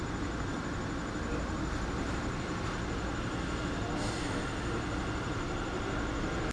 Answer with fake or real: real